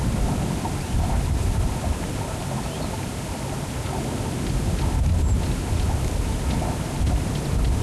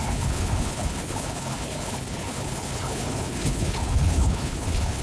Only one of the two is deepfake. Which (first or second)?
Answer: second